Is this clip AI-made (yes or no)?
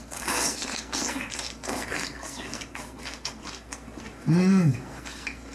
yes